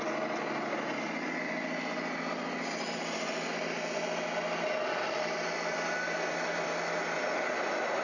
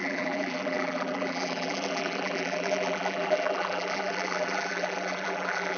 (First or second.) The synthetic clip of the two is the second